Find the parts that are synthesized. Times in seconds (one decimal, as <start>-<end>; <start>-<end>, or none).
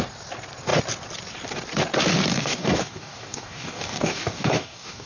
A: 2.3-5.1